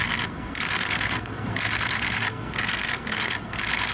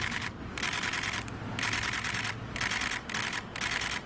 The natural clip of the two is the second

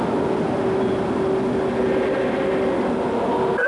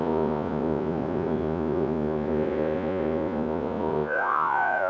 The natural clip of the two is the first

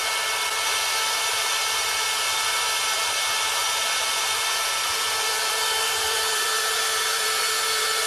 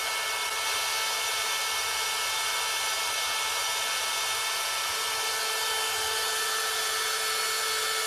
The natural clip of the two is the second